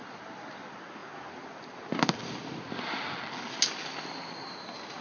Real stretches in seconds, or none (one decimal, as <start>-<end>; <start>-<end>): 0.0-5.0